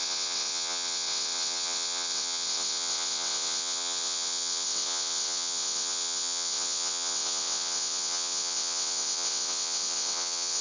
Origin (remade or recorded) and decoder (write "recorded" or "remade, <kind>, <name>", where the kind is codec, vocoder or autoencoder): remade, vocoder, WaveNeXt